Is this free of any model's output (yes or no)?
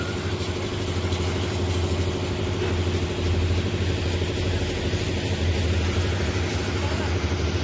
yes